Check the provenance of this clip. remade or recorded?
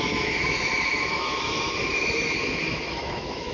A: remade